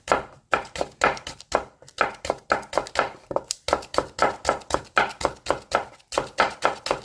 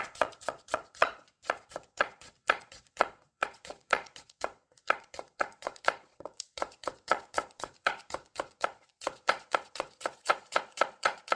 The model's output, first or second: second